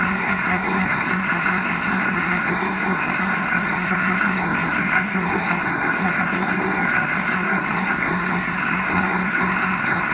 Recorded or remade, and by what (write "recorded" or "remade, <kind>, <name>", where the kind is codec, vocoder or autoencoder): remade, codec, SNAC